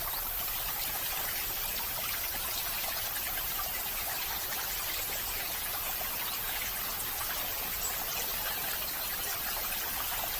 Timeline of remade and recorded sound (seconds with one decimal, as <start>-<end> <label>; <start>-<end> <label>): 0.0-4.1 remade; 4.1-4.6 recorded; 4.6-10.4 remade